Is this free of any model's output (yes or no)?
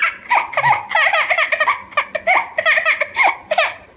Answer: yes